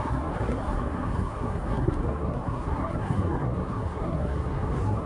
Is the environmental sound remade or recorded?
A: remade